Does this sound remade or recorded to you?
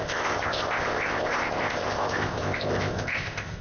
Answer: remade